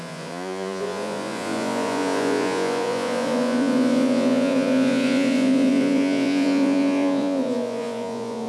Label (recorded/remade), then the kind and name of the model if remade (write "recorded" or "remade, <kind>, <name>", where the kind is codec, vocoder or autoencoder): remade, vocoder, Vocos